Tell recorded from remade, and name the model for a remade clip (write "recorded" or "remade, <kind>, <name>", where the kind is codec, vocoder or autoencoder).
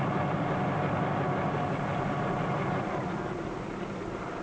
recorded